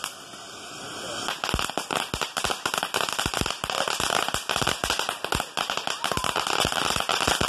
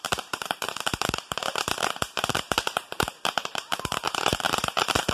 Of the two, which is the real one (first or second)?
first